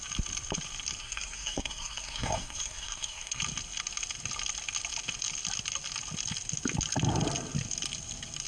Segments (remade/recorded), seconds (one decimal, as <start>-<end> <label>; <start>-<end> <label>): 0.0-1.0 recorded; 1.0-3.4 remade; 3.4-8.5 recorded